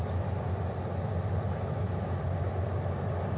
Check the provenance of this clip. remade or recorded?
recorded